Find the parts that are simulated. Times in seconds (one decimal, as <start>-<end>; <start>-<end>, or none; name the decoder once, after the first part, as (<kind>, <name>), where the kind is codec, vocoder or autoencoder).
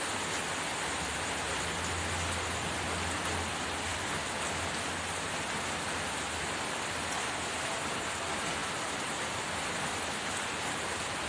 3.9-7.9 (vocoder, BigVGAN v2); 8.6-10.0